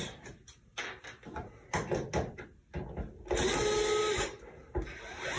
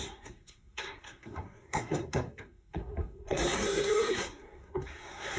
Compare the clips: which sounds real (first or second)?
first